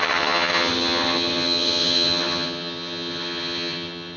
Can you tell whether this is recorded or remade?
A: remade